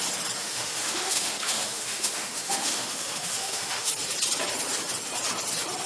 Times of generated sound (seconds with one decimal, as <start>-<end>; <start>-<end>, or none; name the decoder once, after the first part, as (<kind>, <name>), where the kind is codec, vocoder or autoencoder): 0.4-3.9 (autoencoder, DAC-VAE)